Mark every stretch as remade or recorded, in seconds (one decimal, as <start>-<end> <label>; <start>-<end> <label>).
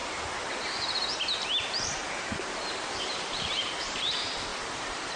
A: 0.0-1.6 recorded; 1.6-2.0 remade; 2.0-2.7 recorded; 2.7-5.2 remade